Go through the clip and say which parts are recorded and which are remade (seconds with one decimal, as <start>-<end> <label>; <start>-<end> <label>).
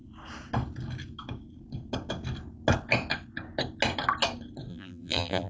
0.0-4.7 recorded; 4.7-5.5 remade